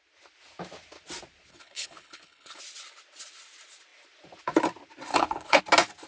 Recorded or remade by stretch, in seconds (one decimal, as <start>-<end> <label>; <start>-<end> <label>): 0.0-1.5 recorded; 1.5-2.6 remade; 2.6-5.1 recorded; 5.1-5.6 remade; 5.6-6.1 recorded